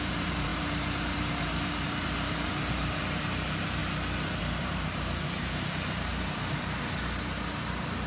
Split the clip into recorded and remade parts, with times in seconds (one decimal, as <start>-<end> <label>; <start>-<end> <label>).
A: 0.0-3.8 remade; 3.8-4.4 recorded; 4.4-6.1 remade; 6.1-8.1 recorded